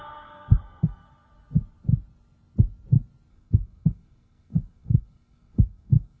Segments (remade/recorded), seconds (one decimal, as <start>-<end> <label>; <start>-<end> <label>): 0.0-1.0 remade; 1.0-3.3 recorded; 3.3-6.2 remade